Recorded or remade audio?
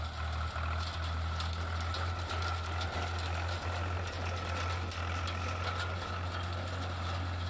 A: recorded